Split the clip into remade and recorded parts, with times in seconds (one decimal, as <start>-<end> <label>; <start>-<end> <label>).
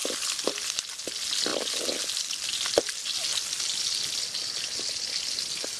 0.0-5.8 recorded